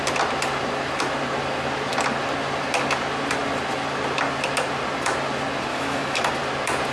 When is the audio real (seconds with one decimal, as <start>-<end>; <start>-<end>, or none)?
0.0-5.7; 6.3-6.9

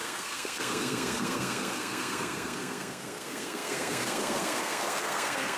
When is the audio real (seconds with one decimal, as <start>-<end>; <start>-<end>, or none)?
none

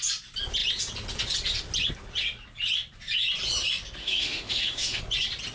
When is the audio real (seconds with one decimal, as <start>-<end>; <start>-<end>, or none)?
0.0-4.0; 5.0-5.5

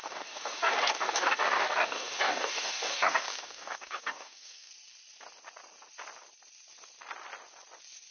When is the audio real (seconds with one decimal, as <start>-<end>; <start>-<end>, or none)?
4.7-8.1

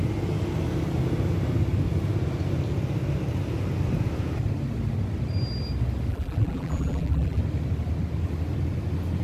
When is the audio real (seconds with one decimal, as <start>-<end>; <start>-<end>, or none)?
0.0-6.1; 7.4-9.2

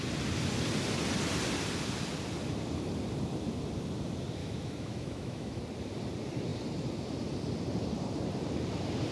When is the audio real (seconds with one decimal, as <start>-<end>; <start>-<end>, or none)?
0.0-4.4; 5.6-9.1